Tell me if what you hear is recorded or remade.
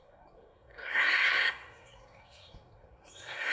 remade